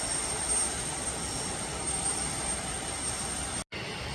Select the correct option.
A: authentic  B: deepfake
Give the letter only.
A